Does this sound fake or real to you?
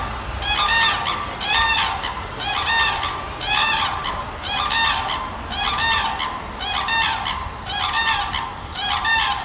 real